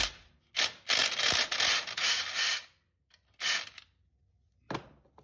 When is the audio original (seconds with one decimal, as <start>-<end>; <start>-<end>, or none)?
0.0-5.2